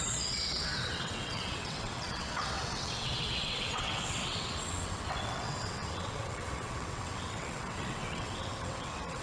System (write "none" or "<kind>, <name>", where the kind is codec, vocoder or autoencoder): vocoder, WaveNeXt